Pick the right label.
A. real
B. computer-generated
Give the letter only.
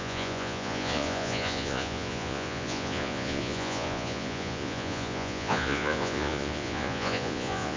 B